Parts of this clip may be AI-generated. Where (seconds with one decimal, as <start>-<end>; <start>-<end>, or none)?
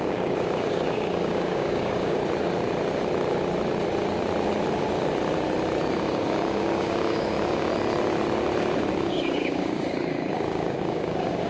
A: 0.0-2.2; 6.0-7.7; 8.9-11.5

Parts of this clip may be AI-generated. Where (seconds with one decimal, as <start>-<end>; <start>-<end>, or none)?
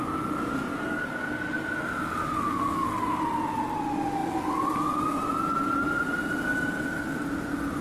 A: 0.7-1.3; 2.2-3.2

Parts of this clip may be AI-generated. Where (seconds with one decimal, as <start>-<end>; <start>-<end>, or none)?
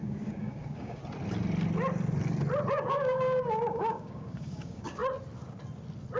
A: 0.0-1.0; 2.7-5.0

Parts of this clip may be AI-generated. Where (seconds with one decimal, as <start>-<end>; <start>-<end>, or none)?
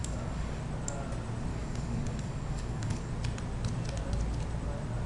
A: 0.0-0.6; 1.5-3.1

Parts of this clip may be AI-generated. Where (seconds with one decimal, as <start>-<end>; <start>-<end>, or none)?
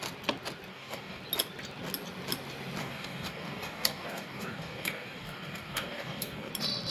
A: 0.7-1.2; 2.8-6.5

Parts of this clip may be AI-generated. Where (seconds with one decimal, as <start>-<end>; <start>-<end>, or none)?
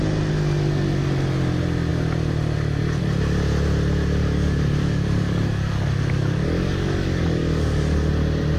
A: 4.2-8.1